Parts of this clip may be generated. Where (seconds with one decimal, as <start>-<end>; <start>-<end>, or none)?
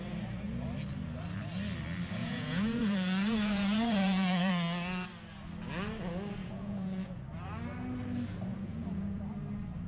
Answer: 2.2-4.5; 6.4-7.1; 8.5-9.2